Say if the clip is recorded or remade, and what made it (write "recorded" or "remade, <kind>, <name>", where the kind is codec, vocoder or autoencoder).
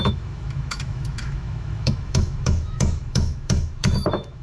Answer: remade, autoencoder, DAC-VAE